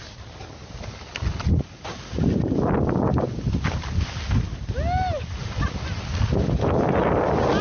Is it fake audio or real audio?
real